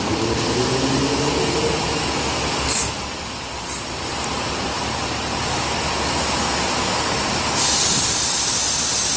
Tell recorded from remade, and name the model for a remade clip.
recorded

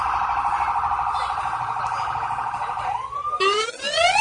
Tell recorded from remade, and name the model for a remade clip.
recorded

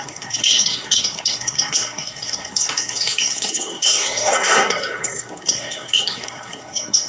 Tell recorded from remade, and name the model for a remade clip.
remade, codec, SNAC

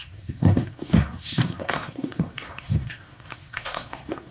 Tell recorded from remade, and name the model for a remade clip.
remade, codec, SNAC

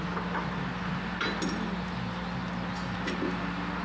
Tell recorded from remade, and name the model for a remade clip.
recorded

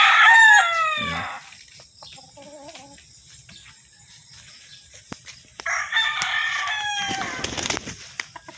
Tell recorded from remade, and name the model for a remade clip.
recorded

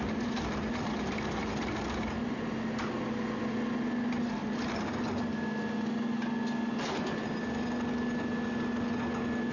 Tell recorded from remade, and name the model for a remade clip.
recorded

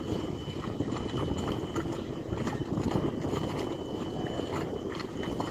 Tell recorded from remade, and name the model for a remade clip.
recorded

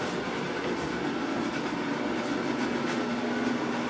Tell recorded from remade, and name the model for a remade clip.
recorded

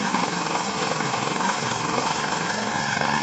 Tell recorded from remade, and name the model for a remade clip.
remade, codec, SNAC